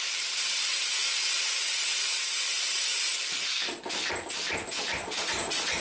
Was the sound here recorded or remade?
recorded